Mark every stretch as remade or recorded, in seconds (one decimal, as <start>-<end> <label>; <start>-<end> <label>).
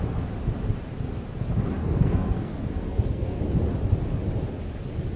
0.0-1.8 recorded; 1.8-3.4 remade; 3.4-5.2 recorded